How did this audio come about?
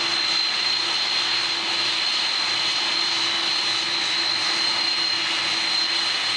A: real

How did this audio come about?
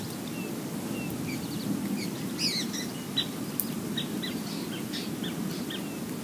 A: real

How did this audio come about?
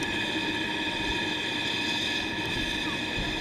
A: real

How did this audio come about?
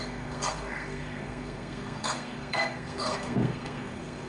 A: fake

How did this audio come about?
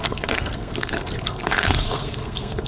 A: fake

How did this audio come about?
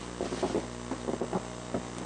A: real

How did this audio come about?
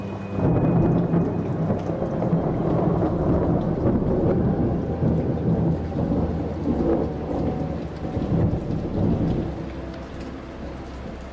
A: real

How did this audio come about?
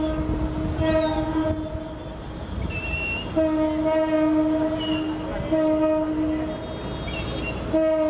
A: real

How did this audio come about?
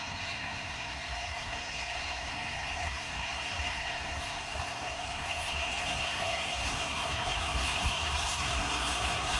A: fake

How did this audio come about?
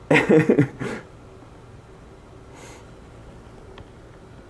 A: real